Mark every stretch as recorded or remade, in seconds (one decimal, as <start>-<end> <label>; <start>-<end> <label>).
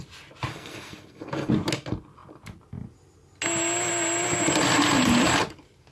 0.0-0.5 recorded; 0.5-1.5 remade; 1.5-5.9 recorded